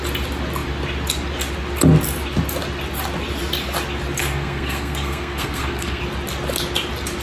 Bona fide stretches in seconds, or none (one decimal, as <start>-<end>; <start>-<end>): 0.0-4.2; 6.0-7.2